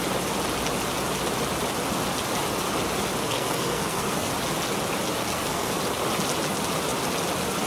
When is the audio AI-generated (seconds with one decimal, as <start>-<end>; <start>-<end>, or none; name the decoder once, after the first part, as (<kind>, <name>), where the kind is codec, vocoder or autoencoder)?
3.2-4.3 (codec, SNAC); 5.2-5.8